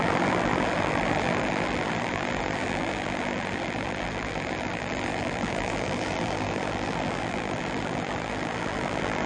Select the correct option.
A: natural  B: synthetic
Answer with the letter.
B